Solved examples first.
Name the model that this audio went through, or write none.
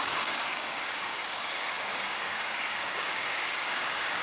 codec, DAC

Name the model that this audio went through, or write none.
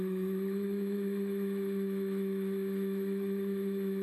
autoencoder, DAC-VAE